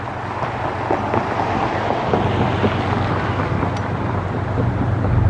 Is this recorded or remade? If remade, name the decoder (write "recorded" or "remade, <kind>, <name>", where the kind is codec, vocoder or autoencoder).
recorded